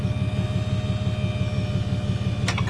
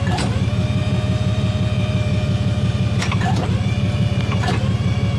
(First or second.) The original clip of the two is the first